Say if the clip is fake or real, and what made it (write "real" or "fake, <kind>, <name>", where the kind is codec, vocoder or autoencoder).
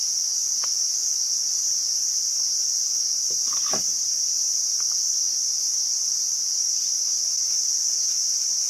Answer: real